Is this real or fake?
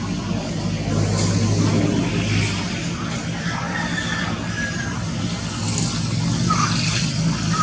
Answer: real